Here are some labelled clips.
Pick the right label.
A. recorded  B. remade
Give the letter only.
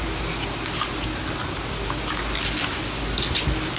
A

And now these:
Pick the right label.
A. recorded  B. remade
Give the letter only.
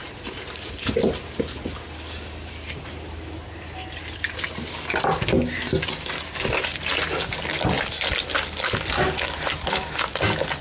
A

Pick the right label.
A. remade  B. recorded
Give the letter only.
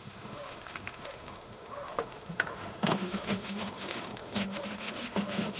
A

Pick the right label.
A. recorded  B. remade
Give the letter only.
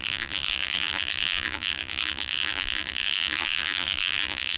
B